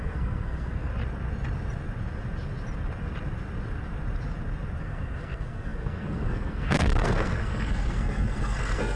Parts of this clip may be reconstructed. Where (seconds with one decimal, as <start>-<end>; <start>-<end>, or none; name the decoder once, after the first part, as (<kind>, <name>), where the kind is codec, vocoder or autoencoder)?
0.0-0.9 (codec, SNAC); 4.8-9.0